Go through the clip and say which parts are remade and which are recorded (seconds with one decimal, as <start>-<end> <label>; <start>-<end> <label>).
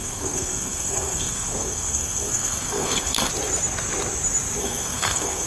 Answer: 0.0-3.3 remade; 3.3-4.6 recorded; 4.6-5.5 remade